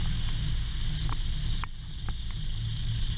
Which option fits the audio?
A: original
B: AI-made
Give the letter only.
A